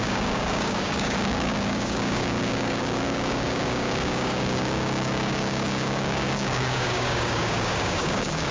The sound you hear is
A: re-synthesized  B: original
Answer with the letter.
A